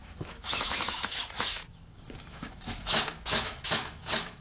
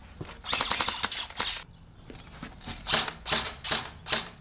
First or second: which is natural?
second